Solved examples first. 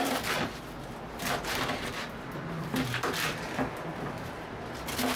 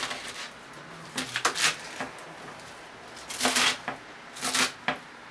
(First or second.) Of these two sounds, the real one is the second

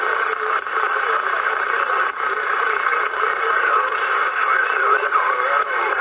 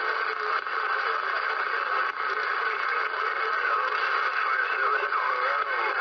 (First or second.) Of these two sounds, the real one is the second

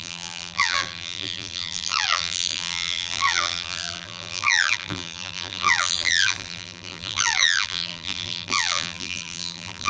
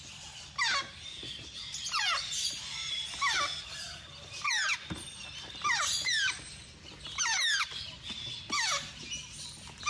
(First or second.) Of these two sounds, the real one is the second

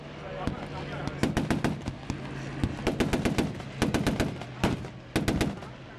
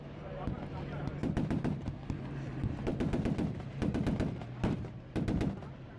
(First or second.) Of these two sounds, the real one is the first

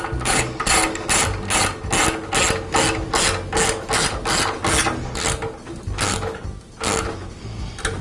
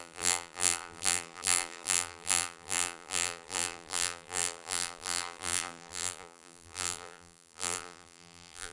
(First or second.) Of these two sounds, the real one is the first